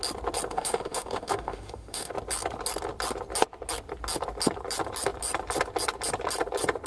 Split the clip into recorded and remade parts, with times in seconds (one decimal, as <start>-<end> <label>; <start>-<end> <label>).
0.0-0.5 recorded; 0.5-2.1 remade; 2.1-6.9 recorded